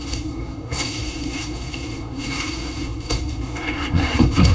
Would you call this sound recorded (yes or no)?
no